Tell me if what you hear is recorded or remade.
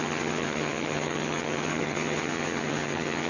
remade